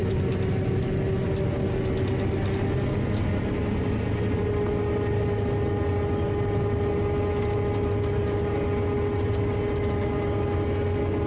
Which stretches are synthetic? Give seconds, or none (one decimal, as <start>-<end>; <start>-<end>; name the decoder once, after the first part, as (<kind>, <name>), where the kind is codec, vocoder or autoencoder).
none